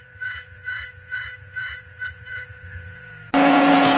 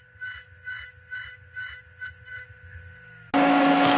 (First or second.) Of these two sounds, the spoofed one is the first